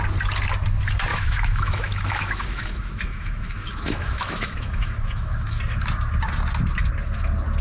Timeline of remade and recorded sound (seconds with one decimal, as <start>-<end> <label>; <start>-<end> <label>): 0.0-1.1 recorded; 1.1-5.6 remade; 5.6-7.6 recorded